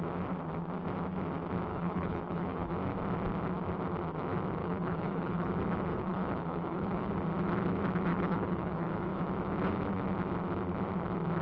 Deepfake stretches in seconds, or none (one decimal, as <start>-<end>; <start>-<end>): 1.7-2.7; 4.6-5.5; 5.9-7.1; 8.1-9.2